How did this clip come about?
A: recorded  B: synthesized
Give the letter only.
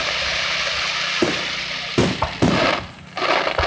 A